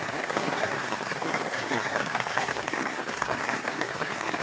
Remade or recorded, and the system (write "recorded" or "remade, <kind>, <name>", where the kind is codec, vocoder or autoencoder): remade, codec, SNAC